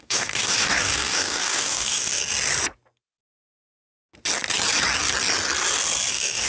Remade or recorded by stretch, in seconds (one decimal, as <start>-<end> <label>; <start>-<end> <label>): 0.0-2.2 remade; 2.2-6.1 recorded; 6.1-6.5 remade